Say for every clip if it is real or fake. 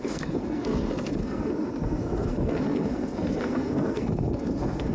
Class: fake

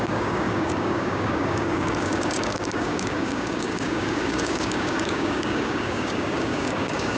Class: fake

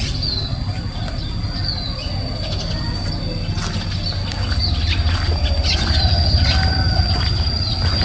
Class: real